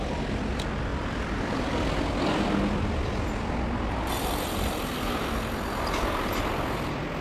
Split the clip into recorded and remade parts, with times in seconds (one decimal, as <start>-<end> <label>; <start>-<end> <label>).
0.0-0.9 recorded; 0.9-1.4 remade; 1.4-7.2 recorded